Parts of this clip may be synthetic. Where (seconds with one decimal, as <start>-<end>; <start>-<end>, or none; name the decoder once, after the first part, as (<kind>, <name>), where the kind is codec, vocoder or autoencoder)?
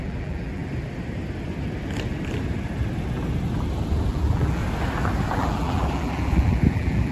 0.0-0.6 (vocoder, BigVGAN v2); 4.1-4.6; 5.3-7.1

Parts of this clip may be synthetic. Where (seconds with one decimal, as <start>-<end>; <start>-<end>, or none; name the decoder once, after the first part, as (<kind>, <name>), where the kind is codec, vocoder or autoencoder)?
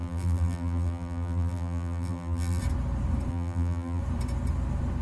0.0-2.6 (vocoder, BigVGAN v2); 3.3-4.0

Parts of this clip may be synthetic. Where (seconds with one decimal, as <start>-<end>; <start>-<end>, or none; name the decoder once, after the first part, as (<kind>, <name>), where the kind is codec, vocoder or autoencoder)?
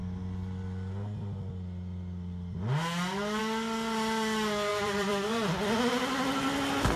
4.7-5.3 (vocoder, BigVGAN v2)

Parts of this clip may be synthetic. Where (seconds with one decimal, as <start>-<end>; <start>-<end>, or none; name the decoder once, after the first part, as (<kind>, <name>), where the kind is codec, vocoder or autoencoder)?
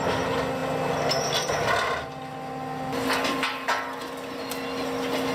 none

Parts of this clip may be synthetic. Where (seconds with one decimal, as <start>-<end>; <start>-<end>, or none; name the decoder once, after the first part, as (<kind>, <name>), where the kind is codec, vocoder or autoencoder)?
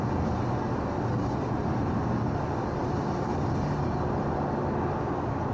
none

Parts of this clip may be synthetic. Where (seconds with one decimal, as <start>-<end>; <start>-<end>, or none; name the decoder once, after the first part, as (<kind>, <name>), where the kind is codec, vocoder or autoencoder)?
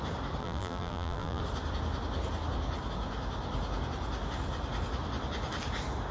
0.4-1.4 (vocoder, BigVGAN v2)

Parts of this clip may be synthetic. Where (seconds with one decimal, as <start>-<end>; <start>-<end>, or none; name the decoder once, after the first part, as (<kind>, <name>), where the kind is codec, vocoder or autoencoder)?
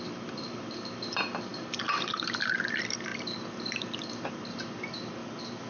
0.0-5.2 (vocoder, BigVGAN v2)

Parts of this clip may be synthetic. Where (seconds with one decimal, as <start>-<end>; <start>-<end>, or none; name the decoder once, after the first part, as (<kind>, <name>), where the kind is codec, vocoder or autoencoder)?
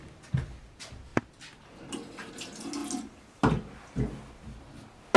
1.1-2.3 (vocoder, BigVGAN v2)